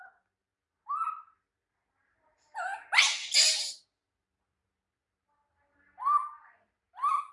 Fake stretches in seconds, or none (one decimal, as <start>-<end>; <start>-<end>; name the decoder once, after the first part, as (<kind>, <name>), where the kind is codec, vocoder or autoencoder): none

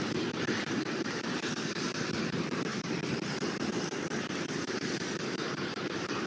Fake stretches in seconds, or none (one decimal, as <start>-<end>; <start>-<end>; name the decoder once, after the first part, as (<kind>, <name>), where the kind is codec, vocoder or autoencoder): 0.0-6.3 (vocoder, BigVGAN v2)

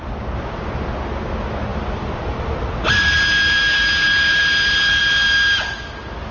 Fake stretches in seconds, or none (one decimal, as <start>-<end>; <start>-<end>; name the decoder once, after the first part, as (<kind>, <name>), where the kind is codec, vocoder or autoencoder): 1.7-5.0 (vocoder, BigVGAN v2)